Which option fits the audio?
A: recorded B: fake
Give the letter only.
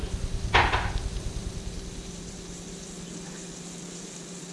A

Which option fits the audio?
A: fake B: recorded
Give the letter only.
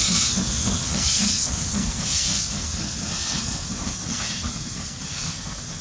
A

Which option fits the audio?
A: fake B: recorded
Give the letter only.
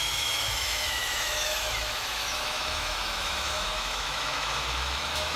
A